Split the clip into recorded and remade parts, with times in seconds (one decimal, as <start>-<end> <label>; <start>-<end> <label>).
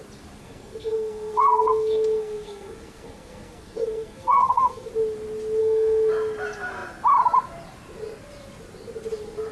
0.0-0.4 recorded; 0.4-4.9 remade; 4.9-5.6 recorded; 5.6-6.1 remade; 6.1-9.5 recorded